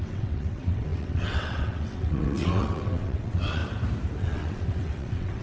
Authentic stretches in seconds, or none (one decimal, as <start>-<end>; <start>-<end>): 3.6-4.2